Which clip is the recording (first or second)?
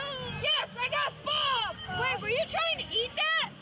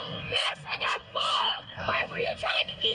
first